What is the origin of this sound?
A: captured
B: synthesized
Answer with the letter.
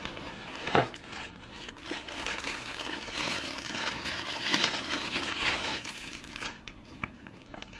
B